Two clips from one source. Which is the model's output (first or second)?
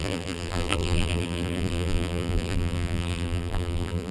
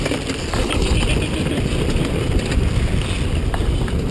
first